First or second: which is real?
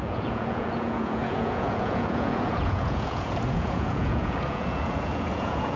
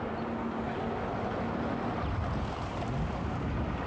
second